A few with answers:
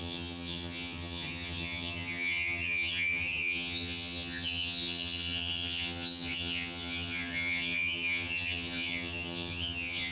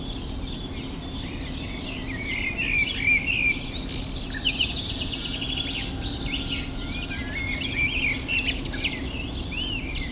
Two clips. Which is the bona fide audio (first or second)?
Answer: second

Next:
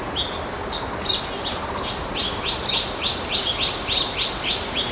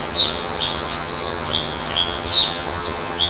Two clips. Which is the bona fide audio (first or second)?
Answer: first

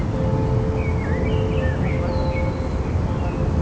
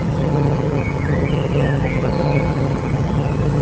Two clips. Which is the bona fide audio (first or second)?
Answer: first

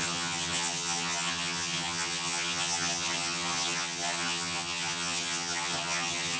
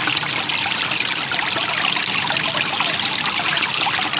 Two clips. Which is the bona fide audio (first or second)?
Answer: second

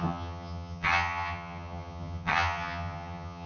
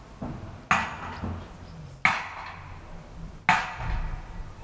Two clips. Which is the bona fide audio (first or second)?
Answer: second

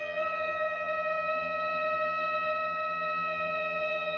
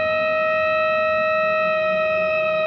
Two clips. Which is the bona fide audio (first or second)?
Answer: second